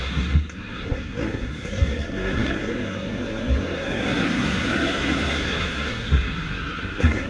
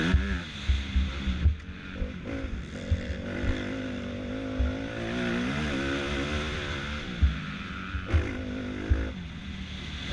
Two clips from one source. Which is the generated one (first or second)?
first